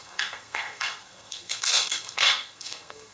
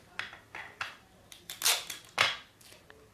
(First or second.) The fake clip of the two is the first